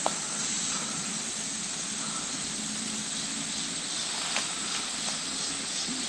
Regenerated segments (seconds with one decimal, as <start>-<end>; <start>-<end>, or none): 0.0-1.1; 4.8-6.1